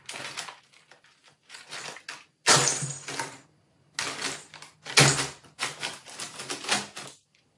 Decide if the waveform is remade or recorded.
recorded